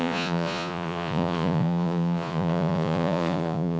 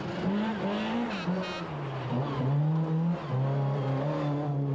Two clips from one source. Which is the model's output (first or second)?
first